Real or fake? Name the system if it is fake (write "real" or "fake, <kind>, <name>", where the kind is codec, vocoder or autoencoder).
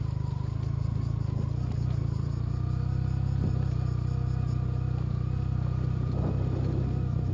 real